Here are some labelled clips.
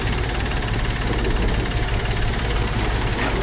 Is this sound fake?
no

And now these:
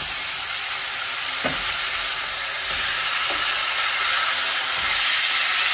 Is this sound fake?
no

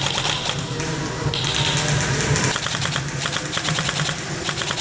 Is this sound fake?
no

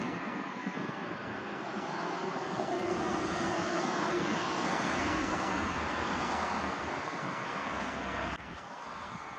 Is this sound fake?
yes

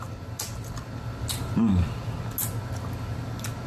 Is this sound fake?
no